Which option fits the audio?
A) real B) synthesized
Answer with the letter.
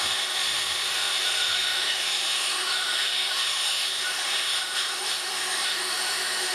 B